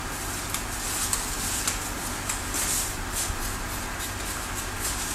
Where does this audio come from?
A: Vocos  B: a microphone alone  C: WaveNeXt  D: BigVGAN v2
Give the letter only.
B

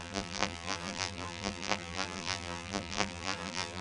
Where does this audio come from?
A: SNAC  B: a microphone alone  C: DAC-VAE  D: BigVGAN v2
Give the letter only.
D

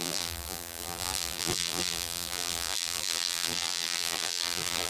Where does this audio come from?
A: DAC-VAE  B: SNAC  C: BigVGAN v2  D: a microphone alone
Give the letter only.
C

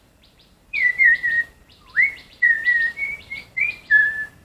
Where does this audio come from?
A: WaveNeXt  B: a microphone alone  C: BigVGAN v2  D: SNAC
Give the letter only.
C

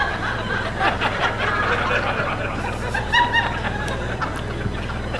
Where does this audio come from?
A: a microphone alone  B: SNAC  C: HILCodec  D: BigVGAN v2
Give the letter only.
A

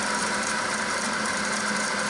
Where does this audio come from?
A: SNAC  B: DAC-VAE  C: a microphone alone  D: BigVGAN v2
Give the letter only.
D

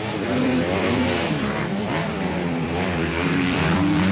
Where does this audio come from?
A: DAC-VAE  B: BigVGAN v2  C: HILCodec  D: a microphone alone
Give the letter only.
B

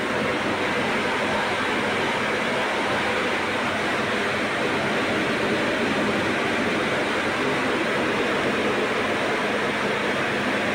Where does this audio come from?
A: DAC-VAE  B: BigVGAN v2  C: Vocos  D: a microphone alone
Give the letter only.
D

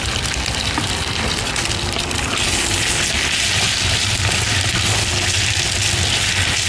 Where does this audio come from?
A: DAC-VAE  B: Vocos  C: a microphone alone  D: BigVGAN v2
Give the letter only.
C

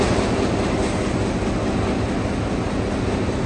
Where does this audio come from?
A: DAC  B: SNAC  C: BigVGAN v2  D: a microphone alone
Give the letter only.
D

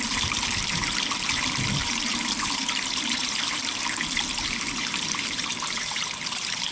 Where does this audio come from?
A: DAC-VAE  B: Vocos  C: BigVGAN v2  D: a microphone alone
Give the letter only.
C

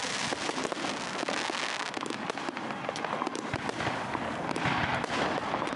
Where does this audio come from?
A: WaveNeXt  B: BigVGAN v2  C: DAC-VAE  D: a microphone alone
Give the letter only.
D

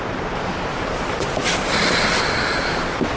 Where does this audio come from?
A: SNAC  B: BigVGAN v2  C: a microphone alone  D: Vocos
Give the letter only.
C